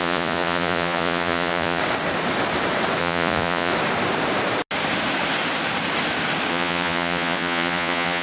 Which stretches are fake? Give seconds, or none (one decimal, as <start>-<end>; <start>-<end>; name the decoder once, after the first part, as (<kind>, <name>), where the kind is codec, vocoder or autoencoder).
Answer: 0.0-1.8 (vocoder, Vocos); 3.0-3.7; 6.5-8.2